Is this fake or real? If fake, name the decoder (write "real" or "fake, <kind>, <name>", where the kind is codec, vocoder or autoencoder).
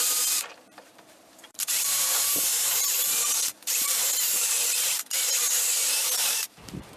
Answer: fake, vocoder, BigVGAN v2